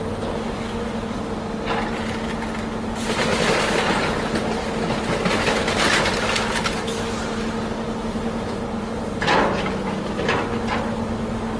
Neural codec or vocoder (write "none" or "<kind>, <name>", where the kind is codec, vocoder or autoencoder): none